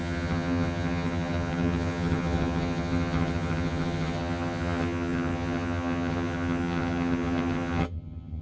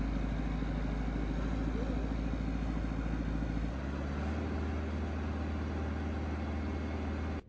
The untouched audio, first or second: second